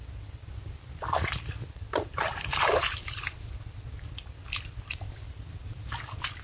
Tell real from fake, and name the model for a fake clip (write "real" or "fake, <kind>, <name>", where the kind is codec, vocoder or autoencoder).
real